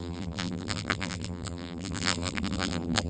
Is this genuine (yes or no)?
no